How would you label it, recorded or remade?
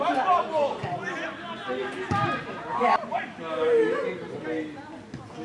recorded